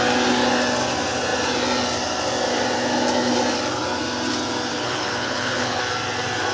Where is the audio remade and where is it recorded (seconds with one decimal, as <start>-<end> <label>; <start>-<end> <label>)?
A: 0.0-4.7 recorded; 4.7-5.8 remade; 5.8-6.5 recorded

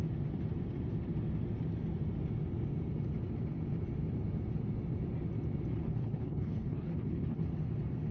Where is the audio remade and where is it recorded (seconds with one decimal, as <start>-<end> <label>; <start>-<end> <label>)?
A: 0.0-5.7 recorded; 5.7-7.4 remade; 7.4-8.1 recorded

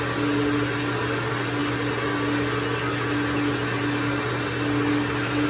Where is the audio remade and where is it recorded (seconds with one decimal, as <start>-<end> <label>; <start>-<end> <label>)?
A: 0.0-5.5 recorded

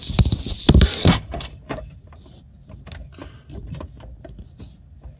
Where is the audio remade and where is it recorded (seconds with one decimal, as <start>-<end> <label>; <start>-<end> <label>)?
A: 0.0-1.0 recorded; 1.0-1.5 remade; 1.5-5.2 recorded

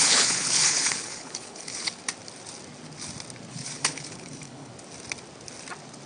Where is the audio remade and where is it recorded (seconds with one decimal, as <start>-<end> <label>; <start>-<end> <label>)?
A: 0.0-2.0 remade; 2.0-3.5 recorded; 3.5-4.7 remade; 4.7-6.1 recorded

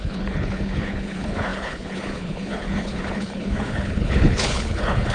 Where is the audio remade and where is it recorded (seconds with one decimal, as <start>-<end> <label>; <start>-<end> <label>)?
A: 0.0-5.1 remade

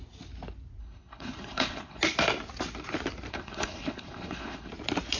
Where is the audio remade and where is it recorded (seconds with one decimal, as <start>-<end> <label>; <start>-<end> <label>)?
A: 0.0-0.8 recorded; 0.8-2.0 remade; 2.0-3.3 recorded; 3.3-4.7 remade; 4.7-5.2 recorded